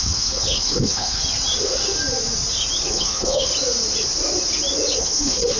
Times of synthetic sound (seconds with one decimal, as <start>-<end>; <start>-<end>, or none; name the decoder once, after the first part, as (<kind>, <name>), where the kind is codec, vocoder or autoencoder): 0.0-1.2 (codec, HILCodec); 2.9-3.5; 5.0-5.6